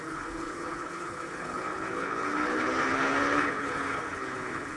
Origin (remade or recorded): remade